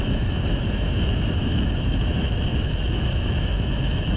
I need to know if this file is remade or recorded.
remade